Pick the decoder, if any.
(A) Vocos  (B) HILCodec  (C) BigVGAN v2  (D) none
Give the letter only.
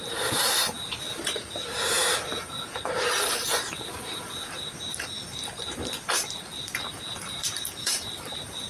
C